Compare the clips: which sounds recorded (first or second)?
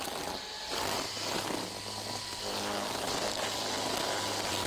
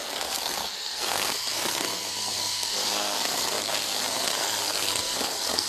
first